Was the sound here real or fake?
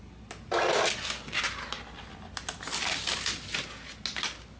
real